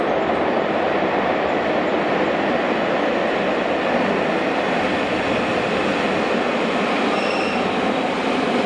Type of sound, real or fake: real